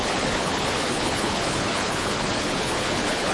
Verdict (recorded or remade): remade